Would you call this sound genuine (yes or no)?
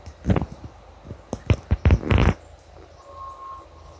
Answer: yes